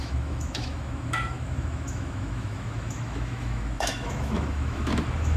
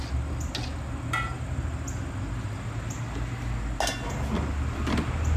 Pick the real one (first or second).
second